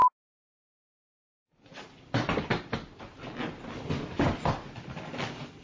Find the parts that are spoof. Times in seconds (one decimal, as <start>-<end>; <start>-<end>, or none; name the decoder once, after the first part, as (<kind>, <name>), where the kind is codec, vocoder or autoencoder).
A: none